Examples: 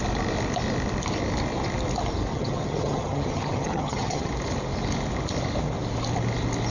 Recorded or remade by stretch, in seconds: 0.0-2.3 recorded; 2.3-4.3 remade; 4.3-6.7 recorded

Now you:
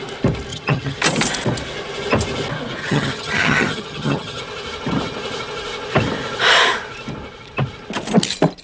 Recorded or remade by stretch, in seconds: 0.0-0.5 recorded; 0.5-1.0 remade; 1.0-2.8 recorded; 2.8-4.4 remade; 4.4-8.6 recorded

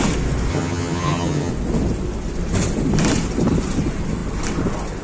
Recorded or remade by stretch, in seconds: 0.0-0.5 recorded; 0.5-1.5 remade; 1.5-5.0 recorded

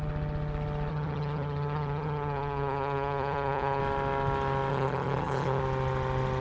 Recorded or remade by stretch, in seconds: 0.0-0.9 recorded; 0.9-3.8 remade; 3.8-4.7 recorded; 4.7-5.6 remade; 5.6-6.4 recorded

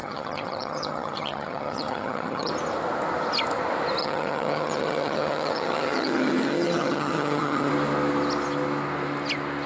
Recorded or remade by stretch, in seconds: 0.0-2.5 remade; 2.5-4.0 recorded; 4.0-7.7 remade; 7.7-9.7 recorded

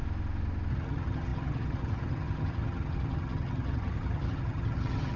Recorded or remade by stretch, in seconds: 0.0-0.7 recorded; 0.7-5.2 remade

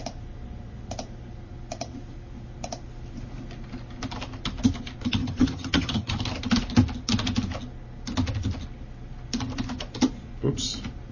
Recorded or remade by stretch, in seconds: 0.0-5.2 recorded; 5.2-6.2 remade; 6.2-11.1 recorded